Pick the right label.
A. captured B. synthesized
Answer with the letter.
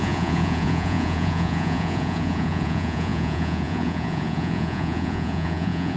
B